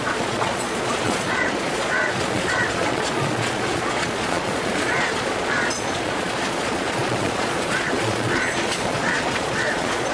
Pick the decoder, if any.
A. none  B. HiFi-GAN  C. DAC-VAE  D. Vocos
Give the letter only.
D